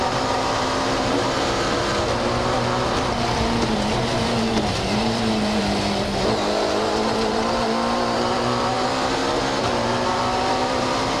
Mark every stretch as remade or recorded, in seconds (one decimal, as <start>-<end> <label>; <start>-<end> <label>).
0.0-9.2 remade; 9.2-9.7 recorded; 9.7-11.2 remade